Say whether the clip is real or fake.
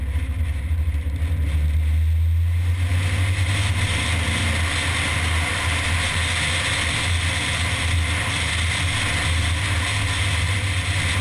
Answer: real